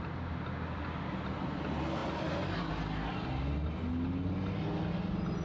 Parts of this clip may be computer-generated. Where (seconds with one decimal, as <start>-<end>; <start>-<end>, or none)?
none